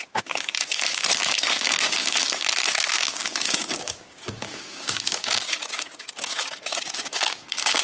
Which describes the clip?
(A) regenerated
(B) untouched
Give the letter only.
A